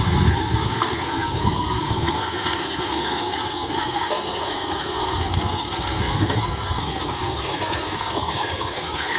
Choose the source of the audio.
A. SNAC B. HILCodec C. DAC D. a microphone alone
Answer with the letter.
A